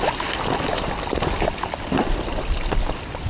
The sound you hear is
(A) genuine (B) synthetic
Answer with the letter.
A